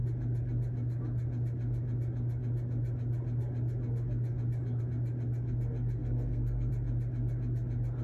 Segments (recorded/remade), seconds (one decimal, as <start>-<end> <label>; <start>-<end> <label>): 0.0-6.0 recorded; 6.0-6.7 remade; 6.7-8.0 recorded